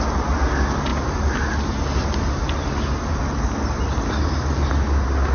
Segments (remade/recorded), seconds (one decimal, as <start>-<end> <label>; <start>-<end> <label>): 0.0-5.3 recorded